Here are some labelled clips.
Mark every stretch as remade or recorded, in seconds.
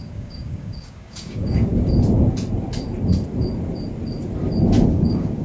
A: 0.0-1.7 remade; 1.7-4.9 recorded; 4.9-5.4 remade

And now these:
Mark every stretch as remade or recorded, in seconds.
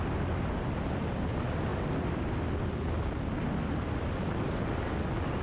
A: 0.0-5.4 recorded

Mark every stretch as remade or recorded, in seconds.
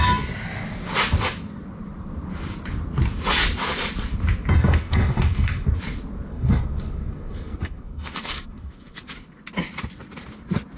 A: 0.0-4.6 recorded; 4.6-5.7 remade; 5.7-6.3 recorded; 6.3-9.0 remade; 9.0-10.8 recorded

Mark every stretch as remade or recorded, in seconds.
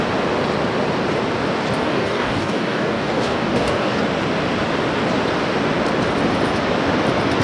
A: 0.0-1.8 recorded; 1.8-4.0 remade; 4.0-7.4 recorded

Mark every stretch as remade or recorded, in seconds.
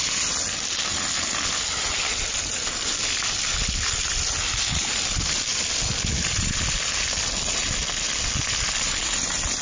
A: 0.0-9.6 recorded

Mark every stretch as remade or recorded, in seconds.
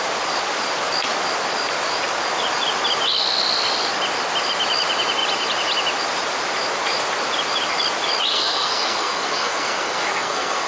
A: 0.0-8.3 recorded; 8.3-10.7 remade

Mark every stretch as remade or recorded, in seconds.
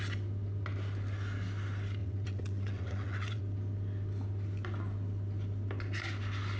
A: 0.0-2.0 recorded; 2.0-3.4 remade; 3.4-6.6 recorded